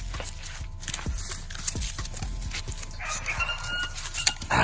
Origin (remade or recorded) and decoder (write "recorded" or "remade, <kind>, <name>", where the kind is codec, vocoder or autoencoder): recorded